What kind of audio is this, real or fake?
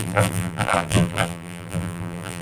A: fake